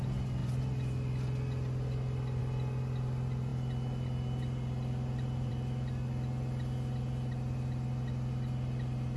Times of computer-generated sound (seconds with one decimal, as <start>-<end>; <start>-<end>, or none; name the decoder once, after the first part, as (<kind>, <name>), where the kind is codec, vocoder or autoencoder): none